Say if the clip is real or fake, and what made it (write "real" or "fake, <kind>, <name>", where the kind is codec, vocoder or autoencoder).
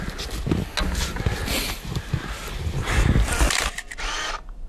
real